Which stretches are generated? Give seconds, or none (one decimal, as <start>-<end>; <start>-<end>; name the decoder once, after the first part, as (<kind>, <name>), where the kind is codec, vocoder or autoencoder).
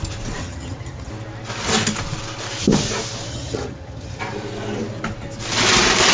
0.4-1.1 (vocoder, HiFi-GAN); 3.3-4.2